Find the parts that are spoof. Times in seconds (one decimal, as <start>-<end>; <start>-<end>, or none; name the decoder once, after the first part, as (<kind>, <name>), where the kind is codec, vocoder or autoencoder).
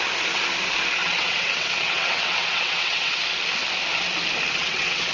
1.0-3.2 (vocoder, WaveNeXt); 4.5-5.1